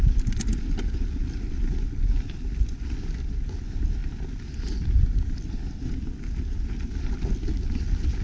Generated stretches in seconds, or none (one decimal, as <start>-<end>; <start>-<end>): none

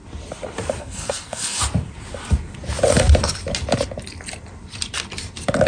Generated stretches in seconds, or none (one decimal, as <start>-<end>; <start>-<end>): 0.8-1.6

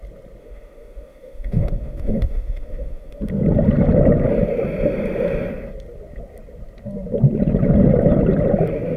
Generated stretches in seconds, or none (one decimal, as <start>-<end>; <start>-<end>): 0.4-3.2

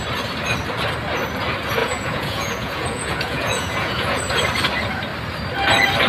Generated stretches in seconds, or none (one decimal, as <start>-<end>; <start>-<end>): 1.8-4.2

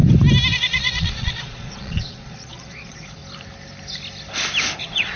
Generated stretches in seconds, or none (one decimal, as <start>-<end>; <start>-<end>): 0.5-3.2; 4.8-5.2

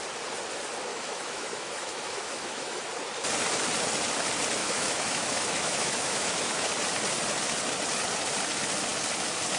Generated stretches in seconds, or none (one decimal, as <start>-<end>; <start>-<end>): 0.9-2.9; 4.6-6.7

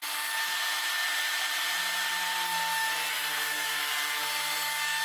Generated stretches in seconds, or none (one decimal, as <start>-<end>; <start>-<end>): 3.1-3.8

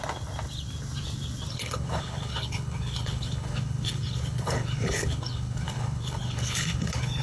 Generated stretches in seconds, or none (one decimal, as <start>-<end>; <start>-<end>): 1.5-7.2